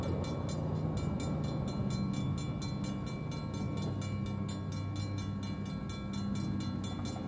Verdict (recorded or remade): recorded